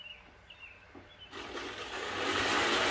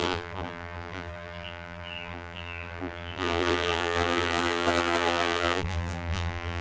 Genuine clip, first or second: first